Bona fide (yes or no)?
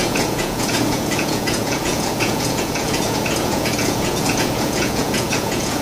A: no